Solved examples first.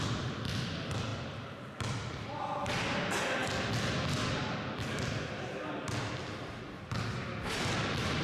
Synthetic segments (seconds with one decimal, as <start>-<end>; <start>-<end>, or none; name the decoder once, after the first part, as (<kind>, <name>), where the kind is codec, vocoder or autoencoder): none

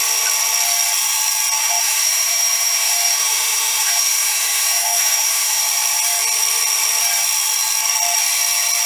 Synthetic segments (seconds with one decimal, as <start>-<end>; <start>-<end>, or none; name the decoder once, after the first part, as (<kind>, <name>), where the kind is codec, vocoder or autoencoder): 1.6-5.6 (autoencoder, DAC-VAE)

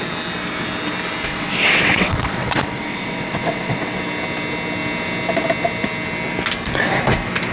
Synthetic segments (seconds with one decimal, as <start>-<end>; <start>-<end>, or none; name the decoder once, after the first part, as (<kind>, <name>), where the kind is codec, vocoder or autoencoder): 1.3-4.0 (vocoder, WaveNeXt)

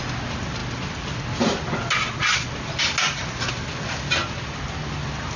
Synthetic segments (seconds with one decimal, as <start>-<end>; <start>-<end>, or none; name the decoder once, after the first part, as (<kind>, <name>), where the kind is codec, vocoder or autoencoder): none

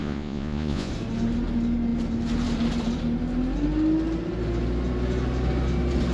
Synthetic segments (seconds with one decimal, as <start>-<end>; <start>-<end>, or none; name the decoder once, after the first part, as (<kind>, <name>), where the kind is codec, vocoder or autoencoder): 0.0-0.9 (vocoder, Vocos)